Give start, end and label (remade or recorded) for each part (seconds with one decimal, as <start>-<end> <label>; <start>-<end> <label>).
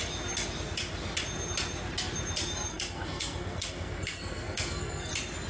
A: 0.0-2.7 recorded; 2.7-5.1 remade; 5.1-5.5 recorded